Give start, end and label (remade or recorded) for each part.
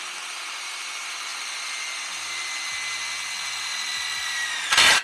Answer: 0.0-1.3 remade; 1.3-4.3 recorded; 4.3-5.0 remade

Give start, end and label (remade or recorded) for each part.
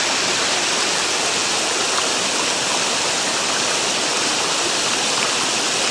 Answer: 0.0-5.9 recorded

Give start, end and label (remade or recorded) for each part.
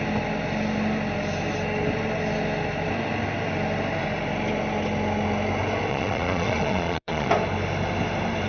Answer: 0.0-5.9 recorded; 5.9-7.3 remade; 7.3-8.5 recorded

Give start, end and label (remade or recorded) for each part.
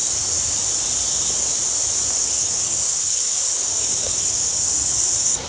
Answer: 0.0-2.2 recorded; 2.2-5.5 remade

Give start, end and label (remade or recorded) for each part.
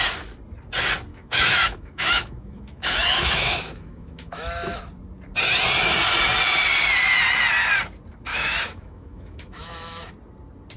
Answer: 0.0-1.1 recorded; 1.1-4.8 remade; 4.8-8.3 recorded; 8.3-10.1 remade; 10.1-10.8 recorded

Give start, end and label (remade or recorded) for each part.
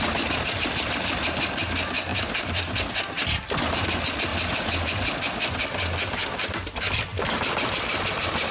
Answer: 0.0-2.1 recorded; 2.1-2.9 remade; 2.9-4.3 recorded; 4.3-6.5 remade; 6.5-8.5 recorded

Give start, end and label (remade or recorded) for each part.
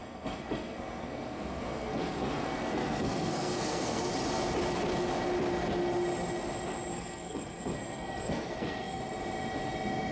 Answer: 0.0-4.1 remade; 4.1-6.9 recorded; 6.9-9.0 remade; 9.0-10.1 recorded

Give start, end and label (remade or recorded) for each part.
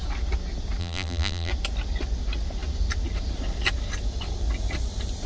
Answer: 0.0-0.8 recorded; 0.8-1.5 remade; 1.5-5.3 recorded